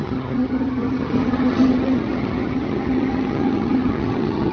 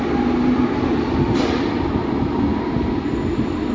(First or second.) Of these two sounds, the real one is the second